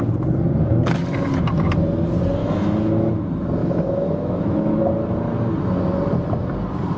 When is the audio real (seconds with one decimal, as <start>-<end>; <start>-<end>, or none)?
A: 0.0-2.4; 3.1-3.6; 4.8-7.0